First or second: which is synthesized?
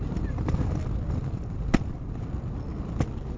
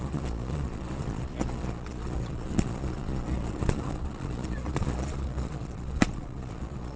second